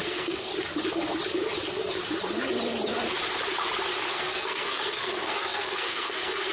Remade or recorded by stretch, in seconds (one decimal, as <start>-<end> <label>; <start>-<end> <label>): 0.0-0.5 remade; 0.5-4.1 recorded; 4.1-6.5 remade